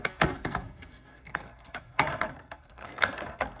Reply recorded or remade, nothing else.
remade